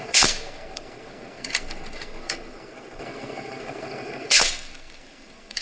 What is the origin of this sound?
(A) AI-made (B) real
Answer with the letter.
A